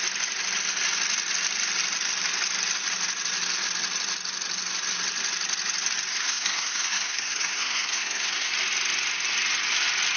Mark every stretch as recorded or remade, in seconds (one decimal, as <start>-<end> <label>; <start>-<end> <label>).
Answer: 0.0-6.1 recorded; 6.1-8.5 remade; 8.5-10.2 recorded